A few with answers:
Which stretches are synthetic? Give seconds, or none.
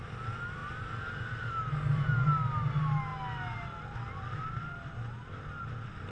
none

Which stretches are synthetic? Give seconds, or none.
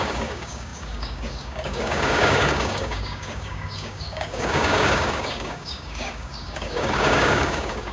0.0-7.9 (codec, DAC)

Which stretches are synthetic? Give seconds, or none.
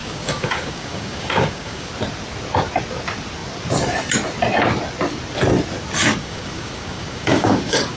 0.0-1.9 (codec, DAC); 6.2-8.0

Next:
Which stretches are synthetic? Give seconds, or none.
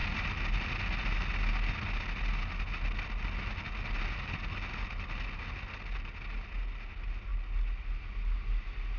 none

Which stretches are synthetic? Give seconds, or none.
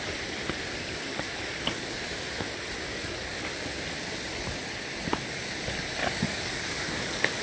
1.1-1.9 (codec, DAC); 2.9-3.7; 6.0-7.4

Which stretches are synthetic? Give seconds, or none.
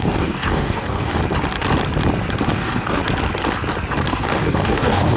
0.0-1.2 (codec, DAC); 2.5-3.0; 4.1-5.2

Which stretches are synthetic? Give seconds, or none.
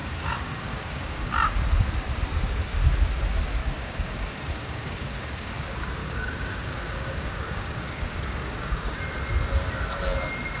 0.0-1.3 (codec, DAC); 3.6-5.5; 6.0-9.0